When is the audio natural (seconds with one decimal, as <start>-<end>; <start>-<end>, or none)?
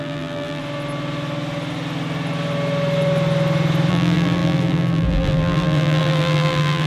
0.6-3.9